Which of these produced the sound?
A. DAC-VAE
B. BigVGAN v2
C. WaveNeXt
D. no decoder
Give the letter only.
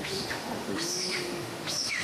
A